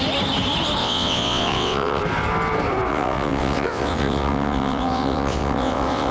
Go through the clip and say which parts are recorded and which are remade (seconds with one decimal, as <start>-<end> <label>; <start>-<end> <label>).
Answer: 0.0-0.8 recorded; 0.8-2.0 remade; 2.0-2.9 recorded; 2.9-6.1 remade